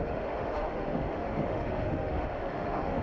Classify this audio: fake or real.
fake